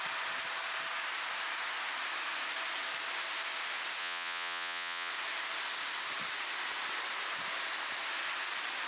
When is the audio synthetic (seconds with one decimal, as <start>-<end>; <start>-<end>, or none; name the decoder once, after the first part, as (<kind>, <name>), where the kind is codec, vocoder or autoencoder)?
4.0-5.1 (vocoder, Vocos)